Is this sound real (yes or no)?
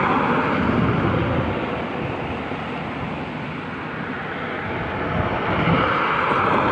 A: yes